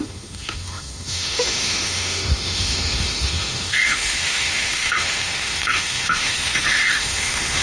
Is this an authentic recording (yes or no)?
no